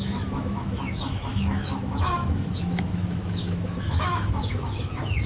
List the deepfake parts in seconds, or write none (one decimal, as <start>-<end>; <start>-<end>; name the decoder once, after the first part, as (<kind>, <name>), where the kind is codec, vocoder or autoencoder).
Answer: 0.0-5.3 (autoencoder, DAC-VAE)